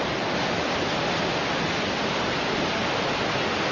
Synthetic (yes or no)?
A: no